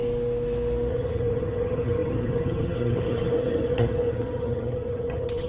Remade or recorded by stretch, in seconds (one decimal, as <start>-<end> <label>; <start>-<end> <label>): 0.0-0.9 recorded; 0.9-5.5 remade